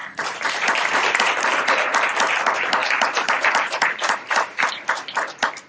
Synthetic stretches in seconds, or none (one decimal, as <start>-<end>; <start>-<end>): 0.0-1.3; 2.8-4.7

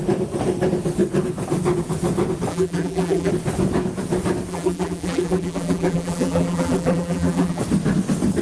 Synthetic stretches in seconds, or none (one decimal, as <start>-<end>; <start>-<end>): 2.5-3.3; 4.5-7.6

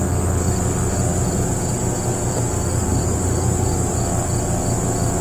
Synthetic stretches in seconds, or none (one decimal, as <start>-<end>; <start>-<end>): 2.8-4.0